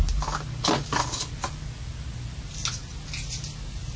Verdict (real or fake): real